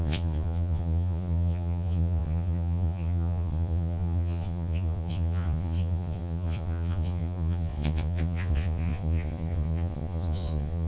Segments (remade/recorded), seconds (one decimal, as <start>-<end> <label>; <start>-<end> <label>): 0.0-10.9 remade